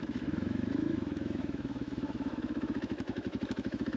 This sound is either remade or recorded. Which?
remade